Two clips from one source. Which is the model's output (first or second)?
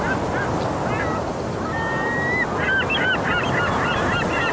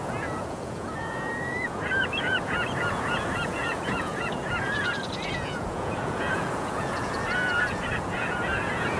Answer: second